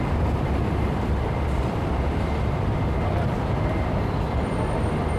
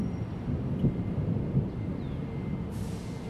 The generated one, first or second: first